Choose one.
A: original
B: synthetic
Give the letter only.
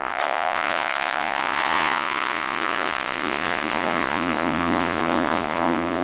B